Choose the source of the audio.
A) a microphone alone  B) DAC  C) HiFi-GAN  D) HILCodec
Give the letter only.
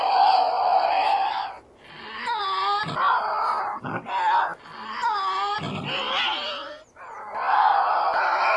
A